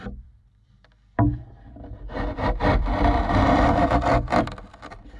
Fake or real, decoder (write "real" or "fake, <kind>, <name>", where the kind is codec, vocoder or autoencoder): fake, vocoder, BigVGAN v2